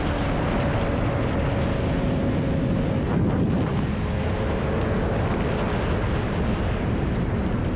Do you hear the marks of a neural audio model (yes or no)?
no